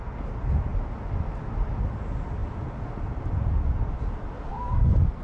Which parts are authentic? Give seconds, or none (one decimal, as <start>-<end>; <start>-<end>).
0.0-4.5